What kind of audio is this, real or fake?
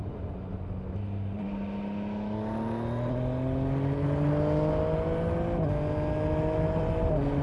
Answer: real